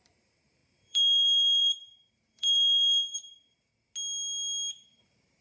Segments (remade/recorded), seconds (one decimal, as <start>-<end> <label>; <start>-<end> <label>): 0.0-3.7 remade; 3.7-5.0 recorded; 5.0-5.4 remade